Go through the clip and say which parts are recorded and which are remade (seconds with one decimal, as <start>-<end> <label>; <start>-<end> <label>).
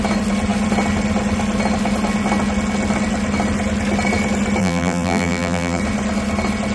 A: 0.0-4.6 recorded; 4.6-5.8 remade; 5.8-6.7 recorded